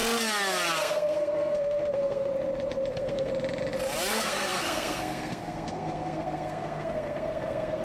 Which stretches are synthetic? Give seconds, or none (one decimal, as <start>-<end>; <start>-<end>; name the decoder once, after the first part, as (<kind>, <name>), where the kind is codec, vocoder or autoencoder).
0.8-2.3 (codec, SNAC); 2.9-3.3; 4.1-7.8